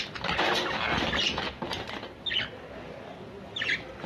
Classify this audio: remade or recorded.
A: recorded